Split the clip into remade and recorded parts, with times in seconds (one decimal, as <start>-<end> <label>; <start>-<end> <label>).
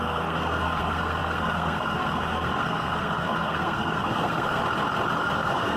0.0-4.6 remade; 4.6-5.1 recorded; 5.1-5.8 remade